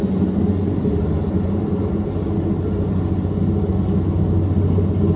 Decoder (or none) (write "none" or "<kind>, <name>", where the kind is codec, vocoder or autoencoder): none